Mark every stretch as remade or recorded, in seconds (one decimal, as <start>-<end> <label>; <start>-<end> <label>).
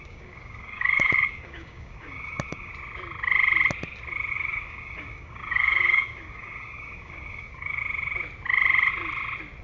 0.0-2.7 remade; 2.7-4.3 recorded; 4.3-7.8 remade; 7.8-9.6 recorded